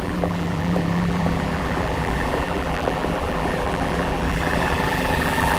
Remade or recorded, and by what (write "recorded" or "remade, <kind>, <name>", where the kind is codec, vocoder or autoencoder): remade, vocoder, BigVGAN v2